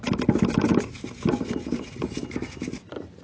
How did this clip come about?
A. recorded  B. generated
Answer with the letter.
A